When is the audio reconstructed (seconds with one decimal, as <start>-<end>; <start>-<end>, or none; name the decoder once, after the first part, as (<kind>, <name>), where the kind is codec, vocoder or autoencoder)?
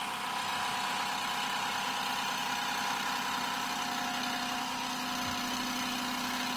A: none